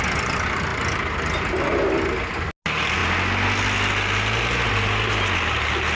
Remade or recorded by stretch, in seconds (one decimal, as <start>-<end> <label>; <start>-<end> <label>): 0.0-5.9 recorded